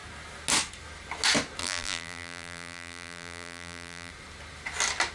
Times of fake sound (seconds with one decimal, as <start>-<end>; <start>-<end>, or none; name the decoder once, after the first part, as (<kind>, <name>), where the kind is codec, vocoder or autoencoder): 1.6-4.1 (vocoder, BigVGAN v2)